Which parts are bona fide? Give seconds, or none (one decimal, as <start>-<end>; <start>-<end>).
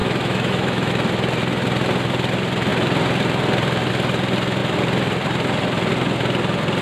0.9-6.8